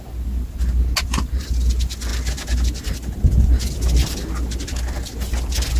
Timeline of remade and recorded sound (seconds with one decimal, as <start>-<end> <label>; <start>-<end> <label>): 0.0-5.8 recorded